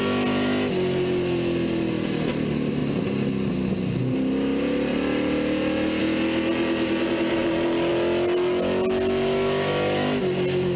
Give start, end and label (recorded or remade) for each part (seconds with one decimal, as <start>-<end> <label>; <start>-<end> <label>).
0.0-10.8 recorded